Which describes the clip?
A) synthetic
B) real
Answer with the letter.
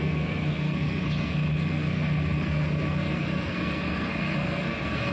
A